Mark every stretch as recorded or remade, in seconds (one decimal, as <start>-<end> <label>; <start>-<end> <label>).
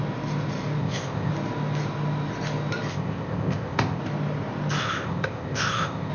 0.0-0.8 recorded; 0.8-1.3 remade; 1.3-2.9 recorded; 2.9-4.0 remade; 4.0-4.8 recorded; 4.8-6.1 remade